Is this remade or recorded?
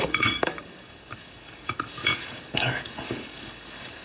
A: remade